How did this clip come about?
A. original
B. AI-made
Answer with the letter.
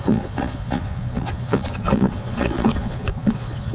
B